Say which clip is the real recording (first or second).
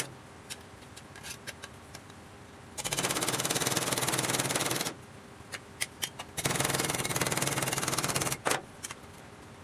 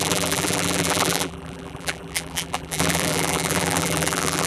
first